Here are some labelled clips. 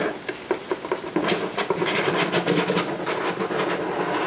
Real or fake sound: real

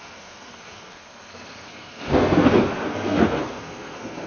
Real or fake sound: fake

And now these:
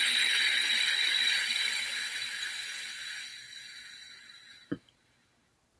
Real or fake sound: real